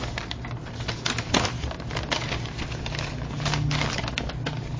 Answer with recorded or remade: recorded